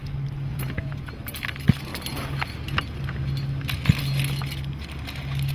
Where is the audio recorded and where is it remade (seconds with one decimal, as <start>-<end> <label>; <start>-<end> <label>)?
0.0-0.5 recorded; 0.5-1.1 remade; 1.1-5.5 recorded